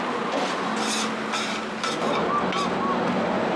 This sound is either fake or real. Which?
real